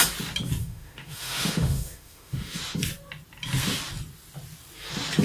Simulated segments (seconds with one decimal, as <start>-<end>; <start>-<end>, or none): 0.6-2.6